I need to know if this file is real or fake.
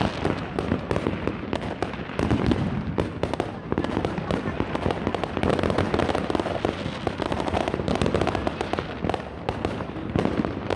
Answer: real